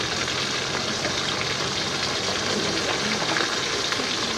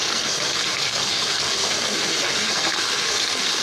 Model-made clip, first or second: second